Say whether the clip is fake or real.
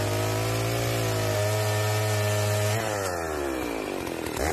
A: real